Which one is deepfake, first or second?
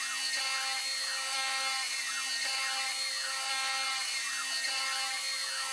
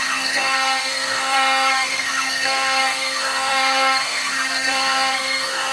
second